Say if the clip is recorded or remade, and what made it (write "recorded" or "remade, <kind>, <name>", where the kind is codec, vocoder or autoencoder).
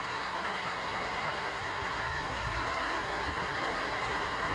remade, codec, SNAC